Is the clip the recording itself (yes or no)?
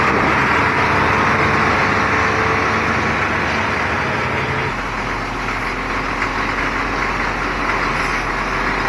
yes